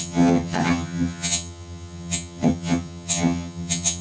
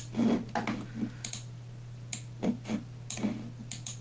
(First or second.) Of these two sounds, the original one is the second